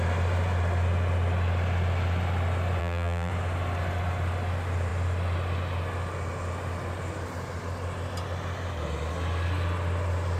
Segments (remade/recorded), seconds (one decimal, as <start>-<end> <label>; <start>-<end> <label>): 0.0-2.8 recorded; 2.8-3.3 remade; 3.3-10.4 recorded